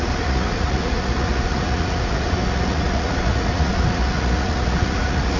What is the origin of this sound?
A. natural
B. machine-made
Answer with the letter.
B